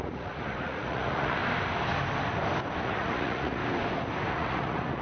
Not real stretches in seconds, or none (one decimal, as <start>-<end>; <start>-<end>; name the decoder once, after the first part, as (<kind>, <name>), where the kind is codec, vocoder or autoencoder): 0.0-1.4 (vocoder, Vocos); 2.8-3.6; 4.3-5.0